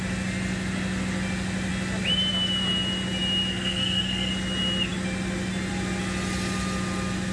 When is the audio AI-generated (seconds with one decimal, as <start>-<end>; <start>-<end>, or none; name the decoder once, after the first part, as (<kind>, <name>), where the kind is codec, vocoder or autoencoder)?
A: 3.5-4.3 (codec, SNAC)